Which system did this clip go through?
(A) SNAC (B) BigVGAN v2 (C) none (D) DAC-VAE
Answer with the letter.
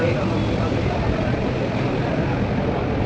C